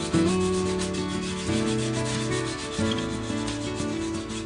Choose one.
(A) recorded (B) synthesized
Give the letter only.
A